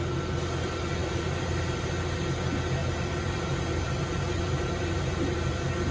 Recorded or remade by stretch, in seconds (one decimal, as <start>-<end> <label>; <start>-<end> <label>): 0.0-1.0 recorded; 1.0-1.6 remade; 1.6-2.8 recorded; 2.8-5.9 remade